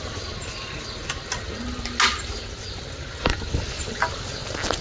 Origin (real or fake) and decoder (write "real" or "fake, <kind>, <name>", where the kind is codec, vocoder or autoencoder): real